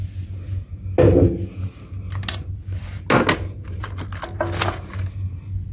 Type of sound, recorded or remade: recorded